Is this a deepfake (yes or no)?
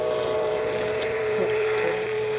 yes